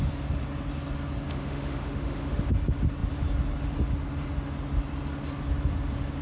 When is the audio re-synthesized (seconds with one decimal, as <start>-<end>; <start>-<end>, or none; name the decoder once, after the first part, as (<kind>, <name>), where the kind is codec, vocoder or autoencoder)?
1.3-2.5 (autoencoder, DAC-VAE)